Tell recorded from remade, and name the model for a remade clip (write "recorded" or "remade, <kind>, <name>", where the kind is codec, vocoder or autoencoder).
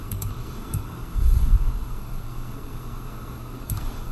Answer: remade, codec, SNAC